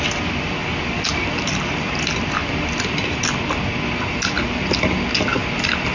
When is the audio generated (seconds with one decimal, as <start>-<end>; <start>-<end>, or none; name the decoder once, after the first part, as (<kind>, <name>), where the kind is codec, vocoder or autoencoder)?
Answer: none